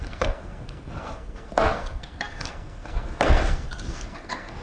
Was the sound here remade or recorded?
remade